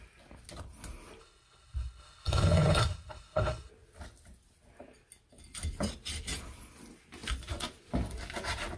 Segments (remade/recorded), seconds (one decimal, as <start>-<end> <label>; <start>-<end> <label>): 0.0-1.2 recorded; 1.2-3.7 remade; 3.7-8.8 recorded